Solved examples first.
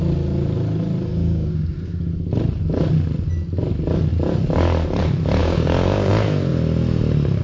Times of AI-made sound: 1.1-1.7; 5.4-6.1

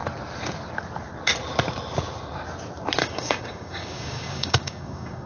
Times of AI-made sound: 3.0-5.3

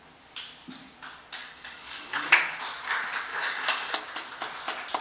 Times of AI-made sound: 1.4-2.3; 3.3-4.0